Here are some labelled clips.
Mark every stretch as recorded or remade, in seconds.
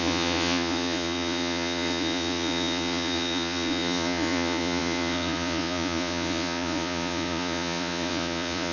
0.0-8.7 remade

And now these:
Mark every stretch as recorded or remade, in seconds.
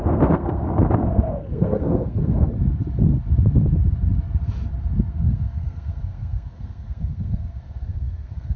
0.0-2.5 remade; 2.5-5.1 recorded; 5.1-8.6 remade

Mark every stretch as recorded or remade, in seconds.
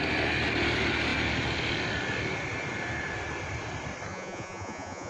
0.0-4.1 recorded; 4.1-5.1 remade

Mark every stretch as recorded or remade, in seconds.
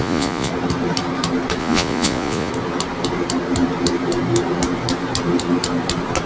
0.0-0.5 remade; 0.5-1.6 recorded; 1.6-2.5 remade; 2.5-6.3 recorded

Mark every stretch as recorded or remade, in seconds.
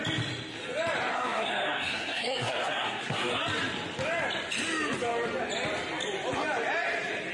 0.0-1.1 recorded; 1.1-3.4 remade; 3.4-7.3 recorded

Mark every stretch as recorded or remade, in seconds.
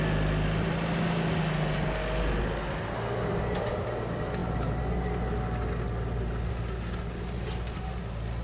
0.0-8.4 recorded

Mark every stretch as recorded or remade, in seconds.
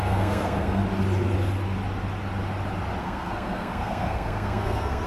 0.0-0.8 remade; 0.8-3.0 recorded; 3.0-5.1 remade